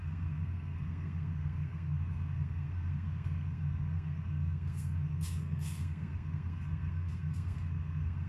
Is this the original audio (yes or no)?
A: no